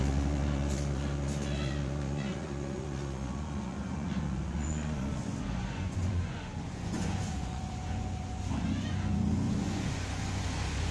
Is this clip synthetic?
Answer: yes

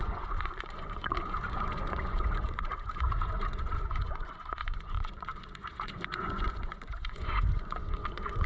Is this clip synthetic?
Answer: yes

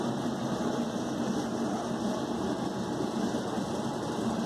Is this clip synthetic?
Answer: no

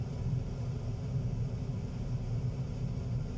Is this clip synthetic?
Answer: no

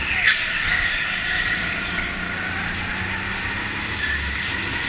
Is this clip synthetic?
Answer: no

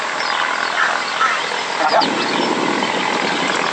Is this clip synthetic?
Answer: no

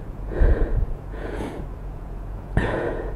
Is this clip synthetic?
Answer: yes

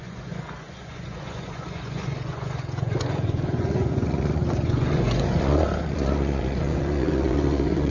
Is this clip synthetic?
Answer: yes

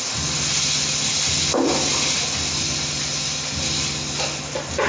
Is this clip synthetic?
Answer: no